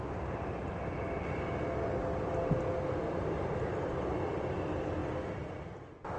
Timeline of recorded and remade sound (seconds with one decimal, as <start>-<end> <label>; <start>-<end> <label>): 0.0-6.2 recorded